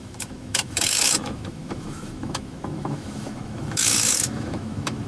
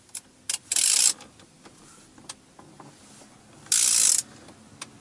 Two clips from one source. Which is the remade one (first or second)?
first